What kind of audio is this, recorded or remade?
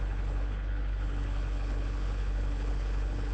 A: remade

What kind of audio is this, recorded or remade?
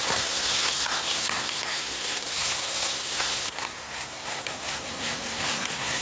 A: remade